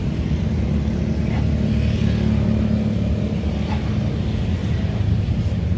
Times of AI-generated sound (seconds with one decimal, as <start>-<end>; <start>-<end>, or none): 4.6-5.8